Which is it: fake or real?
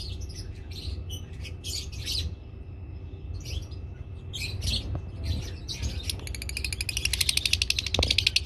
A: real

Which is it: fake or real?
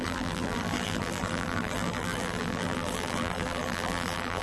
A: fake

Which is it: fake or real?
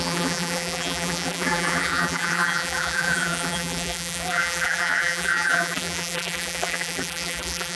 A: fake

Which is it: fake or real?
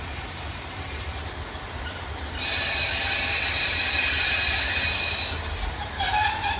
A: fake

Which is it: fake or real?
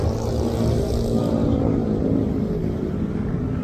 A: fake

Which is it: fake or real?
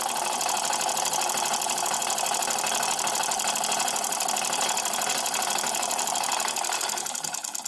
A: real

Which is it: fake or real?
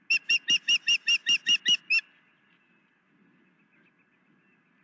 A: real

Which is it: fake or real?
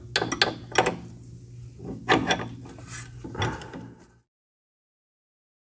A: real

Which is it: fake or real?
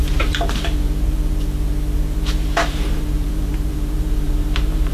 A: fake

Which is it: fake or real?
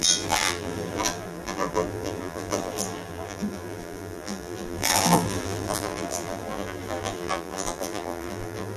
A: fake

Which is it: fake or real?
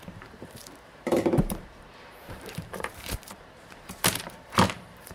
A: fake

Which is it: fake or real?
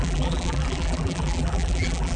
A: fake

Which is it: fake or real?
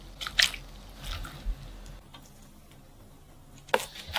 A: real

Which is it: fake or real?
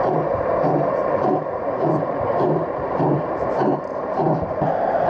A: fake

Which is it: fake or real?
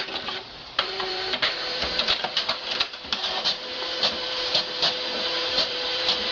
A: fake